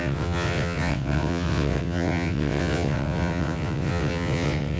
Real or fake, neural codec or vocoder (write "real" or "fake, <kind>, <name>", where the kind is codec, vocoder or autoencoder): fake, vocoder, WaveNeXt